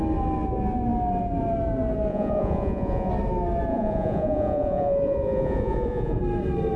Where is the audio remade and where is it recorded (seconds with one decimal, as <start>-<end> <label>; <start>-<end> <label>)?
0.0-2.1 recorded; 2.1-3.1 remade; 3.1-3.7 recorded; 3.7-6.2 remade; 6.2-6.8 recorded